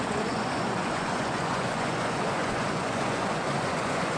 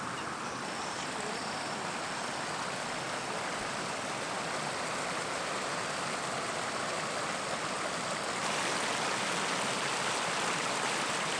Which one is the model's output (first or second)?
first